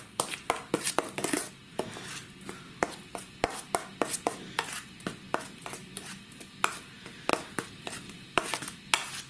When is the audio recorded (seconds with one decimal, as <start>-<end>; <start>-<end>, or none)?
0.0-9.3